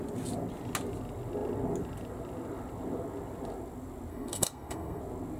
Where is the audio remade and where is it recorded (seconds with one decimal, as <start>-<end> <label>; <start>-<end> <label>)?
0.0-4.1 recorded; 4.1-5.0 remade; 5.0-5.4 recorded